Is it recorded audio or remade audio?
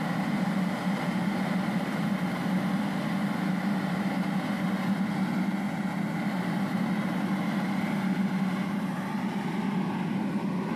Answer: recorded